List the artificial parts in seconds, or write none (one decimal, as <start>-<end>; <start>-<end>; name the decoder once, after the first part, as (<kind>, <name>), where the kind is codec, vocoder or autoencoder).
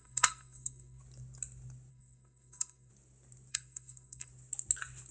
0.0-1.0 (codec, SNAC); 1.9-2.9; 3.5-4.3